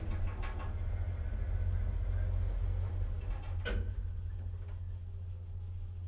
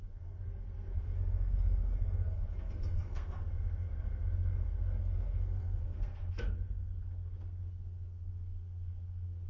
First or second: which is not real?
second